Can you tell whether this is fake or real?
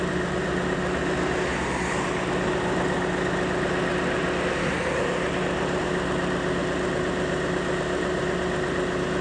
real